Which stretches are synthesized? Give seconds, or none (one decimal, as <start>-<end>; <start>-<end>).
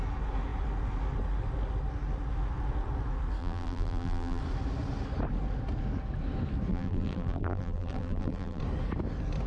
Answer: 3.4-4.4; 6.7-8.6